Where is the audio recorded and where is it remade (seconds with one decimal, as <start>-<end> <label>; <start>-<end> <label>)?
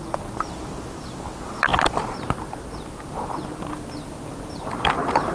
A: 0.0-5.3 recorded